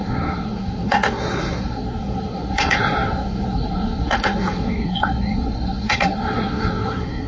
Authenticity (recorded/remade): remade